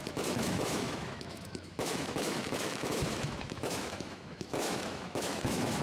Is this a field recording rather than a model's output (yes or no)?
no